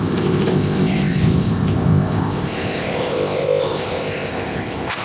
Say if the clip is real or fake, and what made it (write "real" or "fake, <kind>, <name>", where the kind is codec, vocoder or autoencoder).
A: fake, codec, ZipCodec